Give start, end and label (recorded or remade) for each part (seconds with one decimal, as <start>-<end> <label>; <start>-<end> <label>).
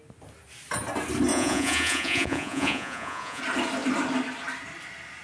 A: 0.0-1.3 recorded; 1.3-3.4 remade; 3.4-5.2 recorded